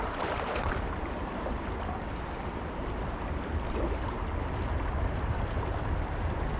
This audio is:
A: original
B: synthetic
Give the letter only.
A